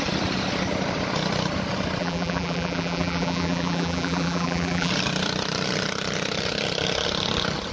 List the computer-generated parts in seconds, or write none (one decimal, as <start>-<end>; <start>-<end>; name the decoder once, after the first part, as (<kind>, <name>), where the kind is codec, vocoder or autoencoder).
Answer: 2.0-4.9 (vocoder, BigVGAN v2)

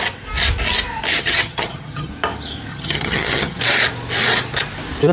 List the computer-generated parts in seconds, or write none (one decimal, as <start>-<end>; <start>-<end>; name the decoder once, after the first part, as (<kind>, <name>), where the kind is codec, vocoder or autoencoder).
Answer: 1.1-2.1 (vocoder, HiFi-GAN); 2.7-3.6

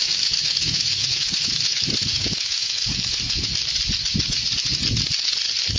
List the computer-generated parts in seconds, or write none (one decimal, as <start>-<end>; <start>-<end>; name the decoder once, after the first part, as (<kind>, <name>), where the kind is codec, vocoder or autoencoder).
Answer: 0.0-3.5 (autoencoder, DAC-VAE)

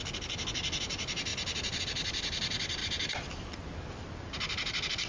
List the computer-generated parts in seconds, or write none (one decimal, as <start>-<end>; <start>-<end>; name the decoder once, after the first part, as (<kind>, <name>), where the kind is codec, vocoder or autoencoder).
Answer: none

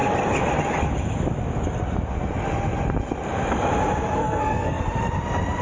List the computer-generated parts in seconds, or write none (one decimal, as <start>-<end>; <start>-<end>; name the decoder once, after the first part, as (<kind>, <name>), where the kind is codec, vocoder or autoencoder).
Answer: 4.2-4.8 (codec, SNAC)

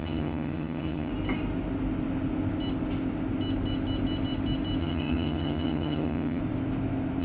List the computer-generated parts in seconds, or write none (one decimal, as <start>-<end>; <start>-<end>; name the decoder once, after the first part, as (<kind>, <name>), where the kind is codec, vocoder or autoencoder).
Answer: 0.0-1.1 (vocoder, HiFi-GAN); 4.8-6.4